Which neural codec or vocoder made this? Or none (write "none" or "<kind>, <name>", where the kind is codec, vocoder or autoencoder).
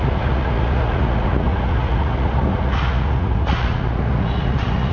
vocoder, Vocos